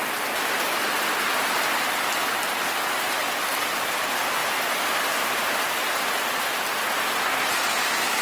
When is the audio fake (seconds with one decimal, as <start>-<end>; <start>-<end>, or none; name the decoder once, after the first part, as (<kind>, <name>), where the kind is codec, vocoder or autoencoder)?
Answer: none

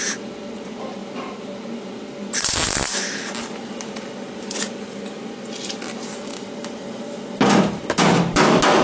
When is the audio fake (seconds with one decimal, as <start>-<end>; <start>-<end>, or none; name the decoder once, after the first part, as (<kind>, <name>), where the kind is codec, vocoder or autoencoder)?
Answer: none

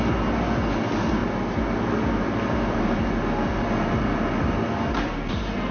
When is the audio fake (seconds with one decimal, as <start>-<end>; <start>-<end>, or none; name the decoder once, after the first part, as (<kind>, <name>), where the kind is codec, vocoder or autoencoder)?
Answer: none

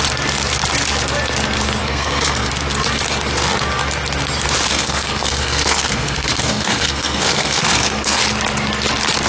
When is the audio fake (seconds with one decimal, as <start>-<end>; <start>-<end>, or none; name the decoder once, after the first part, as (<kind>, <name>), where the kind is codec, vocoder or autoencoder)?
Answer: 1.8-2.5 (codec, SNAC); 4.7-8.2

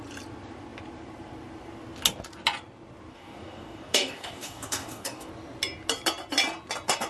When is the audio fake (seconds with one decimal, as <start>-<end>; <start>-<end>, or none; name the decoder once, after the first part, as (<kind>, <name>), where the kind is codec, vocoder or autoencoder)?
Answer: 3.1-5.3 (codec, DAC)

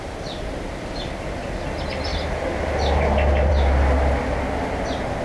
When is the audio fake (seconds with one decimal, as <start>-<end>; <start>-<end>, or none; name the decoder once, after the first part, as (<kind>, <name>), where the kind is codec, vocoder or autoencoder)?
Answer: none